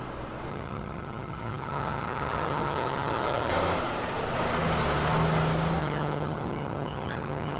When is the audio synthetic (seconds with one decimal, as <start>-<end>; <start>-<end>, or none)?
0.5-3.5; 5.8-7.6